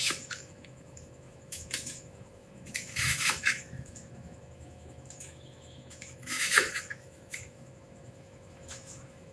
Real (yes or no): no